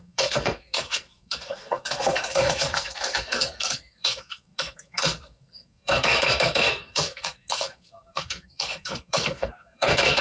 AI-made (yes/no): yes